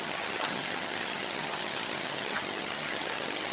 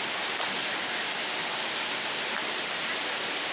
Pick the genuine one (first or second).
second